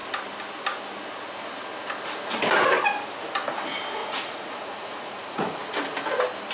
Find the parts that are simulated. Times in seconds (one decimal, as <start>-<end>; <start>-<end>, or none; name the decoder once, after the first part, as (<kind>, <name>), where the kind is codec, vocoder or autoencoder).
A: 4.0-5.6 (vocoder, Vocos)